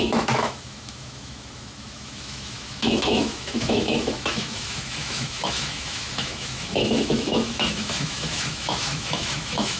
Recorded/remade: remade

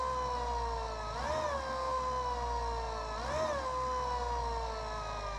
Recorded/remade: recorded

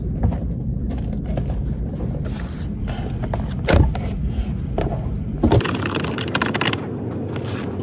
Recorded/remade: recorded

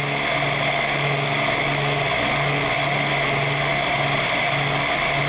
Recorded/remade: recorded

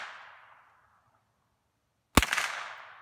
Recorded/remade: recorded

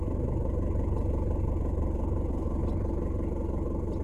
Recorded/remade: recorded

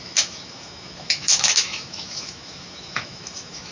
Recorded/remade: remade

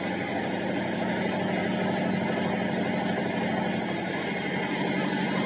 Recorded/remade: recorded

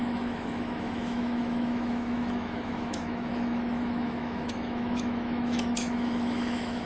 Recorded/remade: remade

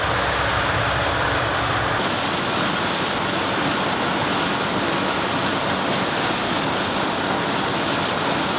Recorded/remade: recorded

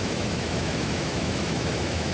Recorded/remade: remade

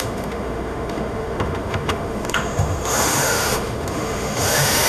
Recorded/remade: remade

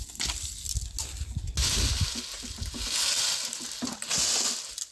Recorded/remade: recorded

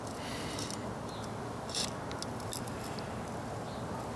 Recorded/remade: recorded